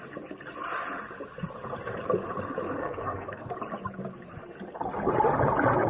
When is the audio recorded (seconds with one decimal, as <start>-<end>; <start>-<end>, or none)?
0.0-2.8; 3.5-5.9